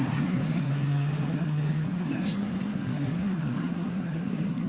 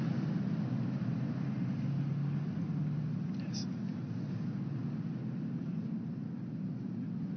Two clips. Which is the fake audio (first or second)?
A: first